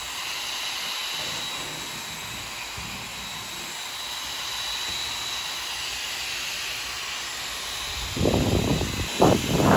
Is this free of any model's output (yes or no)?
yes